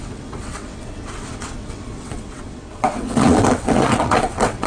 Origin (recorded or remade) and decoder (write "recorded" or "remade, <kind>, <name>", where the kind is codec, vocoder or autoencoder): remade, vocoder, WaveNeXt